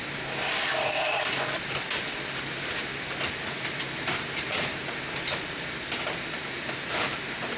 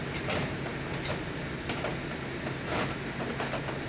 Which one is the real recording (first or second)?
second